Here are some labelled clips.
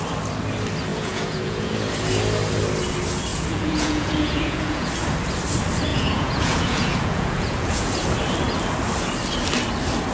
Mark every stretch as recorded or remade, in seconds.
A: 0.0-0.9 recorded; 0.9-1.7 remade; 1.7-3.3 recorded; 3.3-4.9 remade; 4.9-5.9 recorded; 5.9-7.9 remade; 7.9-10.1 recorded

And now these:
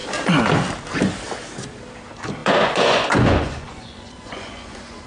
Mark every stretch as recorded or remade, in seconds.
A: 0.0-2.4 recorded; 2.4-5.1 remade

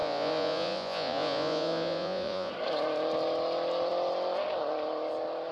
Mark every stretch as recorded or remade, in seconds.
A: 0.0-2.5 remade; 2.5-5.5 recorded